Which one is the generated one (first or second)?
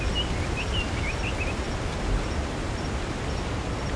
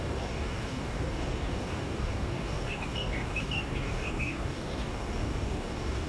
second